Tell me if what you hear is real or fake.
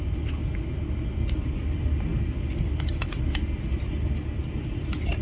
real